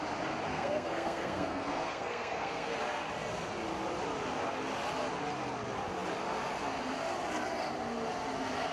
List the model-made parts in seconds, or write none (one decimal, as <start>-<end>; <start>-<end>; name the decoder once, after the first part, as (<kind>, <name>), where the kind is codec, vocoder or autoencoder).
0.5-2.8 (codec, SNAC)